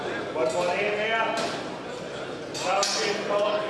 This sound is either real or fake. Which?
real